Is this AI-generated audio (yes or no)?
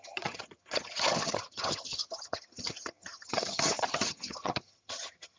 yes